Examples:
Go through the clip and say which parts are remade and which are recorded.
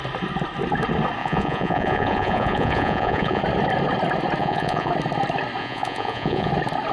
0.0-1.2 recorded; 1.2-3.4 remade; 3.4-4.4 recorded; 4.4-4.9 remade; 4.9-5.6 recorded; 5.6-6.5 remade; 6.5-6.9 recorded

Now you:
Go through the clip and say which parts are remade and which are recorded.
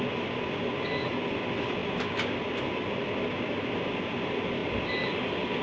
0.0-5.6 recorded